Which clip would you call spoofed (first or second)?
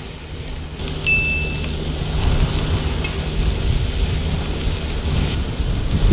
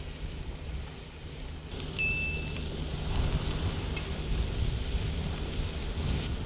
second